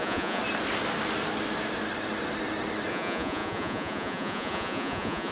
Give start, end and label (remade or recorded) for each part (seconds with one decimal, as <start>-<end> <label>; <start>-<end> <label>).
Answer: 0.0-0.4 remade; 0.4-2.9 recorded; 2.9-5.3 remade

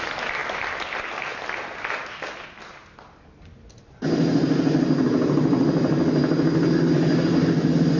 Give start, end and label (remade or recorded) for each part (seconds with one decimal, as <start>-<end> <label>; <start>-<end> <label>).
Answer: 0.0-8.0 recorded

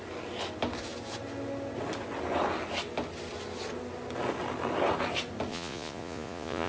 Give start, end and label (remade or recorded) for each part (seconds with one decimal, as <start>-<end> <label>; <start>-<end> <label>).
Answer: 0.0-5.5 recorded; 5.5-6.7 remade

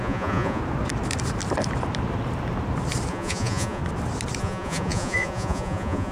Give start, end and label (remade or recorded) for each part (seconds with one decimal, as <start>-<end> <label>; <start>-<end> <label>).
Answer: 0.0-0.6 remade; 0.6-3.1 recorded; 3.1-3.8 remade; 3.8-4.4 recorded; 4.4-6.1 remade

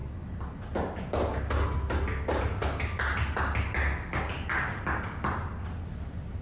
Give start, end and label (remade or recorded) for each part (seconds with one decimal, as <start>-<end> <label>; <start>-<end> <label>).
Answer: 0.0-6.4 recorded